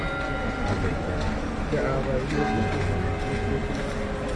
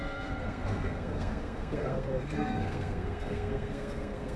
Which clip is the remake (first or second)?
second